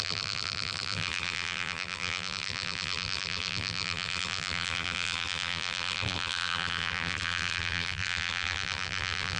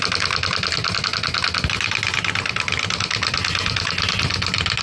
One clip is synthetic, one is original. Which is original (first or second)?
second